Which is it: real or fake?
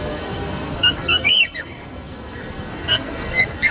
fake